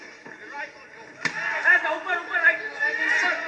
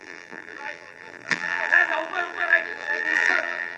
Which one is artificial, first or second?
second